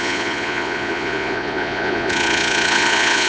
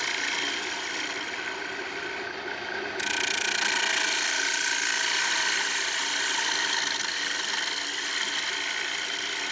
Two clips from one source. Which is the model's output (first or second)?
first